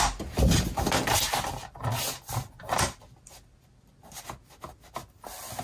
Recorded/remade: recorded